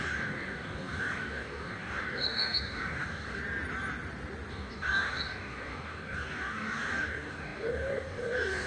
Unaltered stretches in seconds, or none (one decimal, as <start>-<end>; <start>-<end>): 3.4-4.5